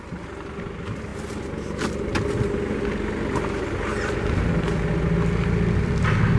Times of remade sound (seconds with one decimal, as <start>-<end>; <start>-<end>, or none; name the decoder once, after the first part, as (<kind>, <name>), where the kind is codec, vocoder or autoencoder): none